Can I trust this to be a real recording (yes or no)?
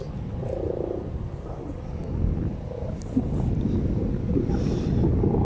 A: yes